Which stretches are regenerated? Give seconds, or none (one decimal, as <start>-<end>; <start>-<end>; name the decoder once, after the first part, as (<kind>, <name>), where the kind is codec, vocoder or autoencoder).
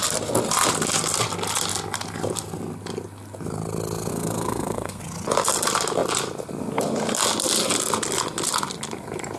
4.1-5.0 (codec, SNAC)